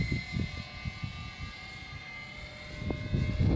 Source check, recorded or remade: recorded